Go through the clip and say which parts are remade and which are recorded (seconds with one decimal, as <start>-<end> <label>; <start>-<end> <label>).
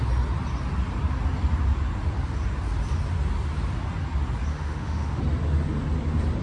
0.0-4.5 recorded; 4.5-5.2 remade; 5.2-6.4 recorded